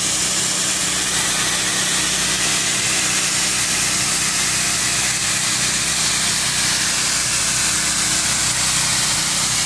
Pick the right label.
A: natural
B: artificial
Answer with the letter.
A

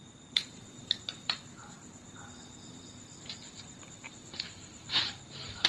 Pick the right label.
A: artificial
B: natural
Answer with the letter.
A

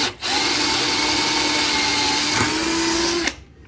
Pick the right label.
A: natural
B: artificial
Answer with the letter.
A